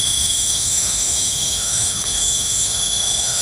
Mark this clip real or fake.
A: fake